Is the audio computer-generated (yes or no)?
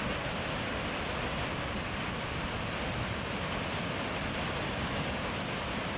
no